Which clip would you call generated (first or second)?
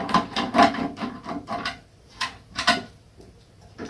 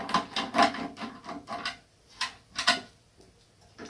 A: first